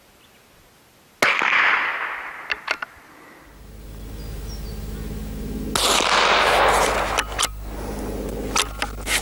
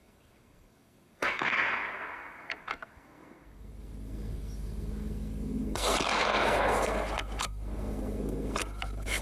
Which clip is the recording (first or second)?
first